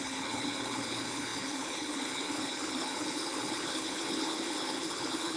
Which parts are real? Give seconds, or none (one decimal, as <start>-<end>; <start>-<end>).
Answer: none